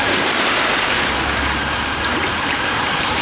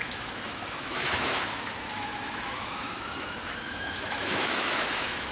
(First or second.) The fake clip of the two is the second